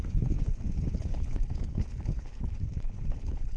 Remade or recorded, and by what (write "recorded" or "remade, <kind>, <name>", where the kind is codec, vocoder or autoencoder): remade, codec, HILCodec